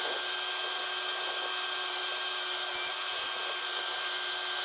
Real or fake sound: real